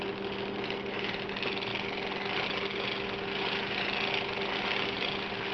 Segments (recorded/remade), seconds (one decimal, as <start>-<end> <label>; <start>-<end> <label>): 0.0-5.5 recorded